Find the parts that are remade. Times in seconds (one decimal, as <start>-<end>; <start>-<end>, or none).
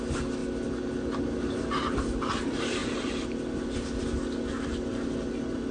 none